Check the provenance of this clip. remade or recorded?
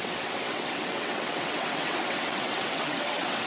remade